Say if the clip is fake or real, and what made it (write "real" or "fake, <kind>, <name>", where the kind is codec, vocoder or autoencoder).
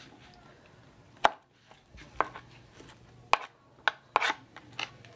real